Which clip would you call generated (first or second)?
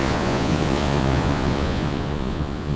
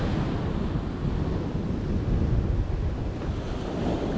first